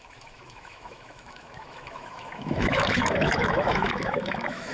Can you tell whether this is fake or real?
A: fake